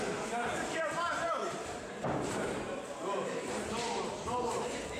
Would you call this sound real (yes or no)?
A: no